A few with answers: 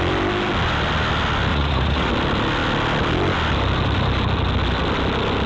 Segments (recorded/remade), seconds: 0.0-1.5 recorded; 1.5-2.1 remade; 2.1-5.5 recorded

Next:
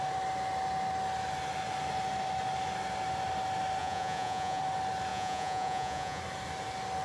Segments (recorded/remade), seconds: 0.0-3.8 recorded; 3.8-4.6 remade; 4.6-5.1 recorded; 5.1-6.2 remade; 6.2-7.0 recorded

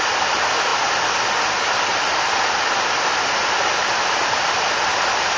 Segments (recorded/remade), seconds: 0.0-5.4 recorded

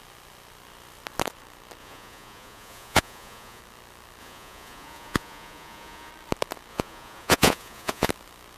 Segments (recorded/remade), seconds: 0.0-1.8 recorded; 1.8-3.6 remade; 3.6-4.2 recorded; 4.2-6.1 remade; 6.1-6.7 recorded; 6.7-8.1 remade; 8.1-8.6 recorded

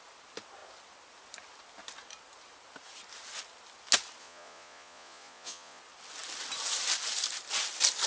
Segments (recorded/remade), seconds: 0.0-4.2 recorded; 4.2-5.8 remade; 5.8-8.1 recorded

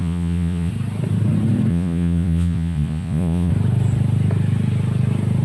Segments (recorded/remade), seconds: 0.0-0.7 remade; 0.7-1.7 recorded; 1.7-3.5 remade; 3.5-5.4 recorded